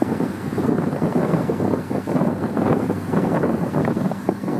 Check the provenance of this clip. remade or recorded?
remade